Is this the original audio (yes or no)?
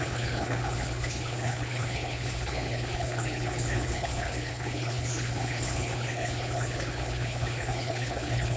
no